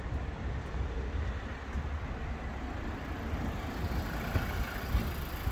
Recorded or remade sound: recorded